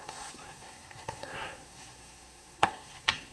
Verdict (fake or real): fake